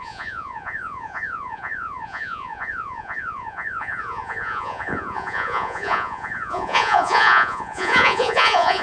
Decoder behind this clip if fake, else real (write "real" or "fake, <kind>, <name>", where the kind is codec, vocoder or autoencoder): fake, vocoder, Vocos